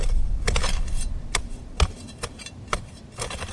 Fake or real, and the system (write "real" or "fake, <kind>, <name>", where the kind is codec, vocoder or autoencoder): real